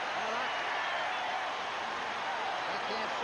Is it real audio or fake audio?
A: real